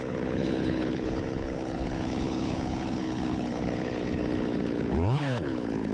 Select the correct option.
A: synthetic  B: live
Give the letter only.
A